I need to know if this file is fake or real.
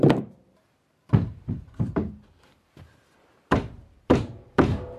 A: fake